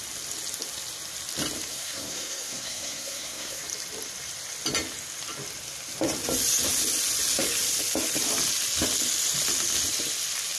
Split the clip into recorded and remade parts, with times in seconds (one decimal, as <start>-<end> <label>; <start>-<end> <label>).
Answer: 0.0-1.7 recorded; 1.7-3.6 remade; 3.6-10.6 recorded